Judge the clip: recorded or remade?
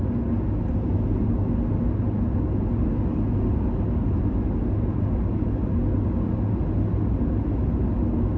recorded